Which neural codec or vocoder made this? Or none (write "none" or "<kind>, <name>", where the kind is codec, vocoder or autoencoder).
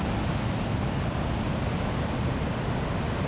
none